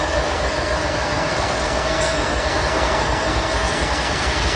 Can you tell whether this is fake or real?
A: fake